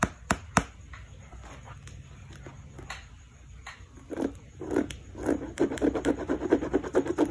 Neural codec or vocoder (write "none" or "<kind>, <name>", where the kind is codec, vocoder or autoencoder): none